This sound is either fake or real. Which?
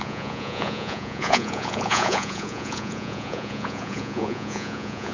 fake